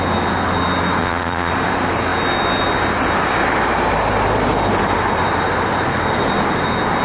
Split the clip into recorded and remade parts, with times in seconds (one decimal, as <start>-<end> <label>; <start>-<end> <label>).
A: 0.0-1.0 recorded; 1.0-1.5 remade; 1.5-7.0 recorded